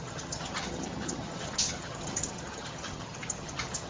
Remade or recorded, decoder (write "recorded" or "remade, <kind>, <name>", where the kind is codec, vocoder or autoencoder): remade, vocoder, HiFi-GAN